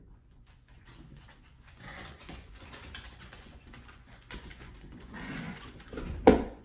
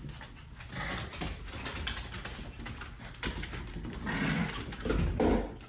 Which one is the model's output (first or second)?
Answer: first